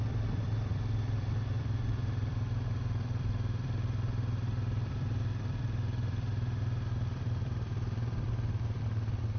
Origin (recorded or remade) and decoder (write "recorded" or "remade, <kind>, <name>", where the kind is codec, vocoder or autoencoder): remade, vocoder, BigVGAN v2